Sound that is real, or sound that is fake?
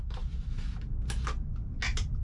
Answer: real